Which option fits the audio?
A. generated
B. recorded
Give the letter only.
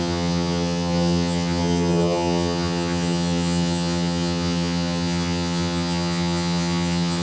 A